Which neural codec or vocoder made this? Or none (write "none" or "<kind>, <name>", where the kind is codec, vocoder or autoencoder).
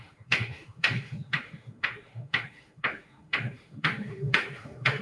autoencoder, DAC-VAE